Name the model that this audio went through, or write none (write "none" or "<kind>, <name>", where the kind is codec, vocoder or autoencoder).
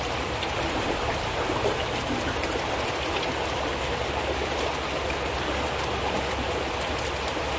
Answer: none